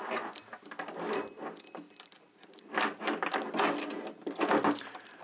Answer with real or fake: real